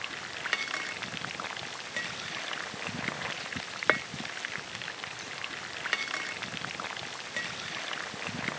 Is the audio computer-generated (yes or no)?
no